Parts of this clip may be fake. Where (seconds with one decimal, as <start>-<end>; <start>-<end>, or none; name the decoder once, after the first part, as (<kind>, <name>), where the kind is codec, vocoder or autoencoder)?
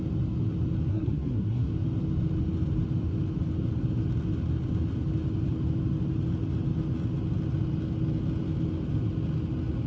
0.9-1.7 (codec, SNAC)